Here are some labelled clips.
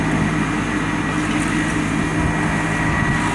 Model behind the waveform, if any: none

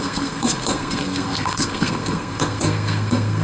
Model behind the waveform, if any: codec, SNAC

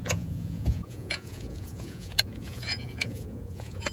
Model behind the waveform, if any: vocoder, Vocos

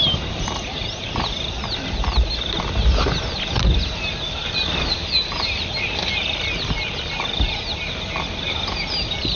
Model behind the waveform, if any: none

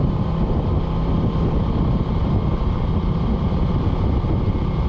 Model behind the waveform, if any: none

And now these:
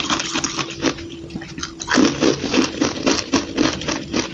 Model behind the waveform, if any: none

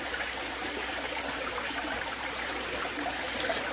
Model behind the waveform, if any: none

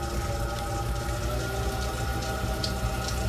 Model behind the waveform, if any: none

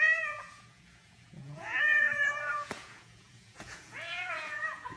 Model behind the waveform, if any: vocoder, Vocos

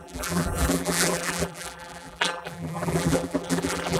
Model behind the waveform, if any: vocoder, BigVGAN v2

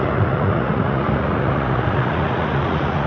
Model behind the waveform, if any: vocoder, Vocos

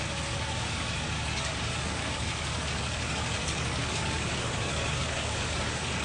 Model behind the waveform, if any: codec, DAC